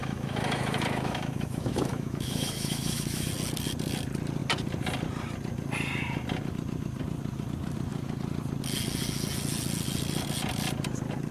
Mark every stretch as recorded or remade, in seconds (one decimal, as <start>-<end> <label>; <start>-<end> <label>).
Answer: 0.0-3.3 remade; 3.3-11.3 recorded